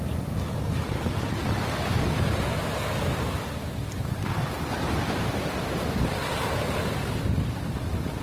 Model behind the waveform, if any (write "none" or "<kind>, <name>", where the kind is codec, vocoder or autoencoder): none